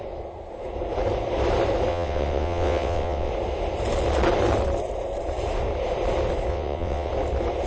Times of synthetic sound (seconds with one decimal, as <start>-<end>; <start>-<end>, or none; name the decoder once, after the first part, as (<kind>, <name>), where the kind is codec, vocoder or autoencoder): 1.9-3.3 (vocoder, WaveNeXt); 6.5-7.1